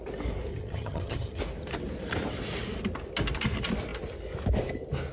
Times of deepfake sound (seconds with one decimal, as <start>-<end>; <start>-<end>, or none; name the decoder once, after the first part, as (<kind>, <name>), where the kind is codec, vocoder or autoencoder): 0.5-1.4 (vocoder, HiFi-GAN)